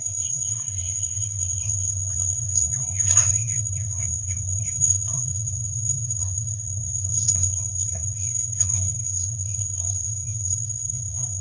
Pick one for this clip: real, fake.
fake